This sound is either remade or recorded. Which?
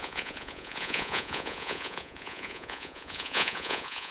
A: remade